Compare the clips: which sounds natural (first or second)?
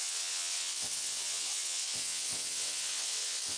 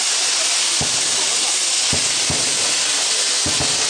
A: second